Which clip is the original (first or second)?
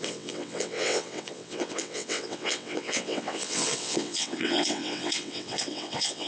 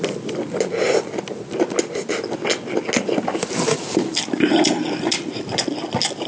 second